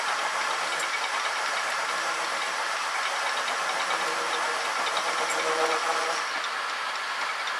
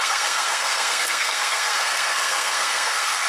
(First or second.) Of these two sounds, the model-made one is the second